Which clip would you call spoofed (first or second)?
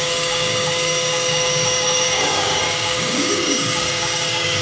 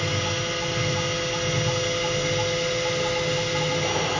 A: first